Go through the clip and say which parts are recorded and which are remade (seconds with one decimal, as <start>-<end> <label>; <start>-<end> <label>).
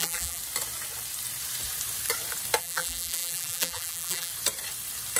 0.0-0.4 remade; 0.4-2.6 recorded; 2.6-4.3 remade; 4.3-5.2 recorded